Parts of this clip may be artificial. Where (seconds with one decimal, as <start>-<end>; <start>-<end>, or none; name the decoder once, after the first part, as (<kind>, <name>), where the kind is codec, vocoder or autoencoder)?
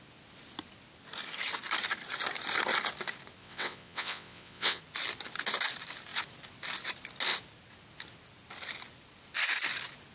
3.4-4.8 (vocoder, WaveNeXt)